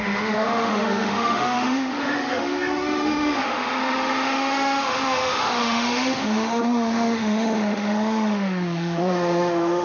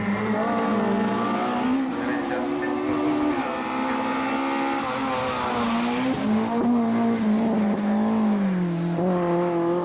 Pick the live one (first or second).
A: second